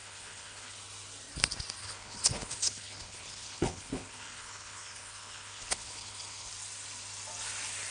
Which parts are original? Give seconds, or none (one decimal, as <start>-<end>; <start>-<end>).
0.8-1.8; 6.5-7.9